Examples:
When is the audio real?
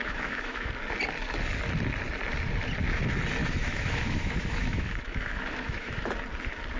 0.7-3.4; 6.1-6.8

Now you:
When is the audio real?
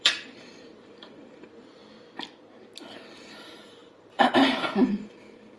1.8-3.2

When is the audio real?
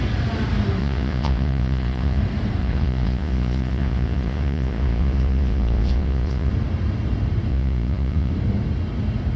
0.0-0.8; 2.2-2.6; 6.5-7.5; 8.3-9.4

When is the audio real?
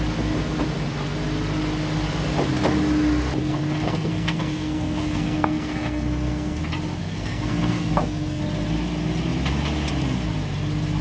0.0-3.4; 6.6-7.0; 8.4-11.0